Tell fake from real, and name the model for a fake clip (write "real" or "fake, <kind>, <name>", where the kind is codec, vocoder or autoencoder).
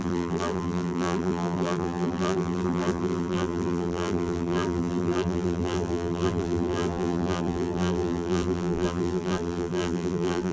fake, vocoder, BigVGAN v2